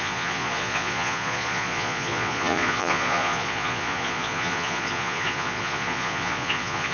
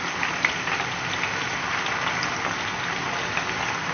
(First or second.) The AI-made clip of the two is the first